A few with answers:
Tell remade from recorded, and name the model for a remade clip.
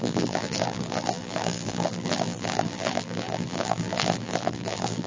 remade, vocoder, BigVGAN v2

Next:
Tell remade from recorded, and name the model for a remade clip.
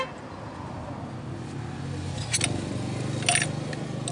recorded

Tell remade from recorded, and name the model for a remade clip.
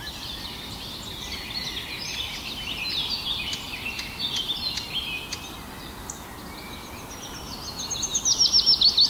recorded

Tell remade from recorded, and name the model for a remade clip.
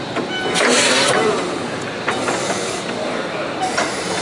recorded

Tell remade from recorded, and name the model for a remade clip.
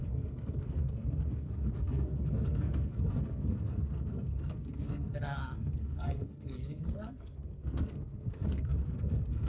remade, codec, SNAC